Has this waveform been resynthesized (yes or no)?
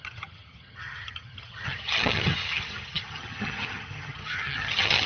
yes